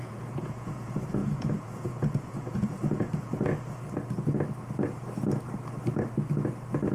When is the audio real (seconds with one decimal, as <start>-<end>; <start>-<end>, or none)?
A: 3.5-6.9